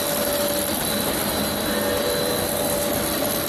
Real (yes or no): yes